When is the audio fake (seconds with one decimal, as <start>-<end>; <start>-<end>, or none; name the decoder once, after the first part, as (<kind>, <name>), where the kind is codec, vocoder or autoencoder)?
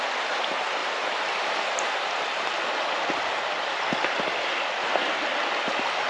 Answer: 0.8-4.5 (vocoder, BigVGAN v2)